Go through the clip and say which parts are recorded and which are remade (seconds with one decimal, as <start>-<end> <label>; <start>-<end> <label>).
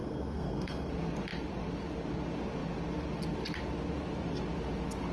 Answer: 0.0-0.9 remade; 0.9-5.1 recorded